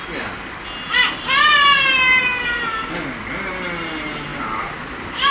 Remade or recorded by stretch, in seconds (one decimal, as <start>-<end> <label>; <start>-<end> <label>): 0.0-5.3 recorded